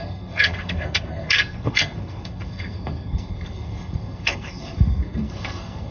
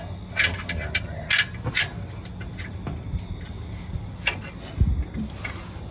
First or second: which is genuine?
second